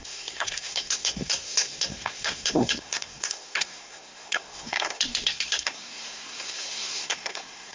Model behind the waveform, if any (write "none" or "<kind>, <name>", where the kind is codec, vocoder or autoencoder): codec, SNAC